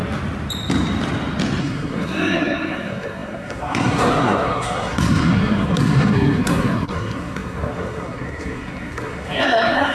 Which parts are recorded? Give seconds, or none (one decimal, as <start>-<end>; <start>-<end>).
0.0-1.6

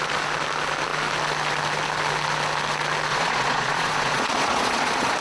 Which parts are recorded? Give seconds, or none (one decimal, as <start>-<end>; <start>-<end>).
0.0-3.1

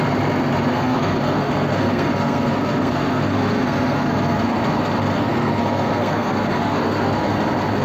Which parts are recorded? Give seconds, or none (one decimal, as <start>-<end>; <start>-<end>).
0.0-0.7; 4.6-5.1; 7.3-7.8

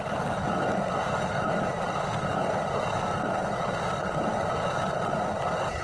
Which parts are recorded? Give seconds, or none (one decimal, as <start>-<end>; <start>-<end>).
0.0-5.8